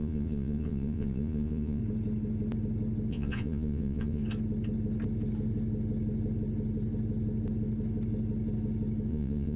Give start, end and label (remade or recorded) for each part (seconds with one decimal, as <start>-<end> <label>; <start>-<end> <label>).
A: 0.0-1.8 remade; 1.8-3.1 recorded; 3.1-4.2 remade; 4.2-9.1 recorded; 9.1-9.6 remade